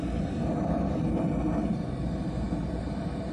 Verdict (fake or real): real